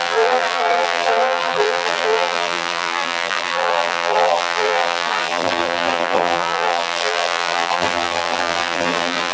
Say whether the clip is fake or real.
fake